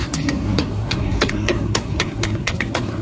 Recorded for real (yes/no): no